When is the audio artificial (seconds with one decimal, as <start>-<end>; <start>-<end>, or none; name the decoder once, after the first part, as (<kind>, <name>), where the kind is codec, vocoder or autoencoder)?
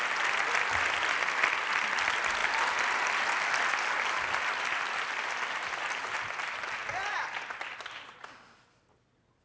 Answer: none